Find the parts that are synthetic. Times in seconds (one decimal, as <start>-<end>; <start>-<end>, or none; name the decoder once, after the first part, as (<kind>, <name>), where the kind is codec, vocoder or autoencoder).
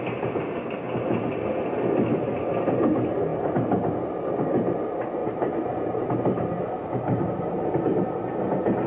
5.2-7.8 (vocoder, BigVGAN v2)